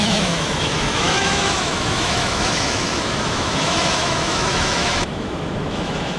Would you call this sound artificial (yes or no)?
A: yes